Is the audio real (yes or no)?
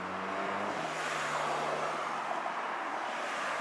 yes